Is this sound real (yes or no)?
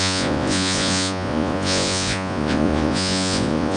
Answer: no